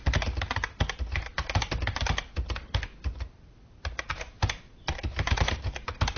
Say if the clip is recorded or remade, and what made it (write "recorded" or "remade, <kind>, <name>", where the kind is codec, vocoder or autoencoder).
recorded